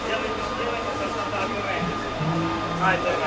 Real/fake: real